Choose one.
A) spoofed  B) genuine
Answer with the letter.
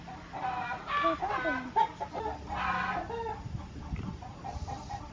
B